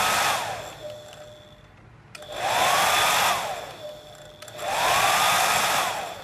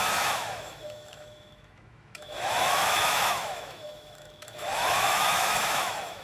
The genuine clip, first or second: first